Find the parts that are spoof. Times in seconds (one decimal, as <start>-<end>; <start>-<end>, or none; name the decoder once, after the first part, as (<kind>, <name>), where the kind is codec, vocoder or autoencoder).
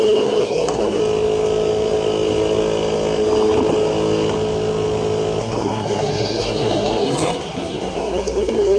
0.0-1.0 (codec, SNAC); 5.4-8.8